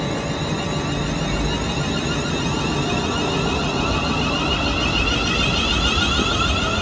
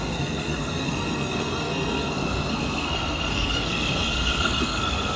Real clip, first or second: first